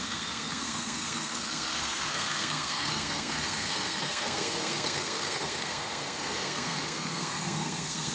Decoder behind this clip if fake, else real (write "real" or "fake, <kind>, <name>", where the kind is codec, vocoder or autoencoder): fake, codec, SNAC